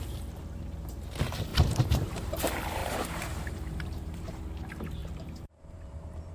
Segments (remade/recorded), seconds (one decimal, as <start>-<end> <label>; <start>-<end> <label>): 0.0-1.5 recorded; 1.5-2.4 remade; 2.4-2.8 recorded; 2.8-4.4 remade; 4.4-5.0 recorded; 5.0-6.3 remade